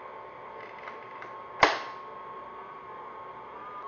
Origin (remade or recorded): recorded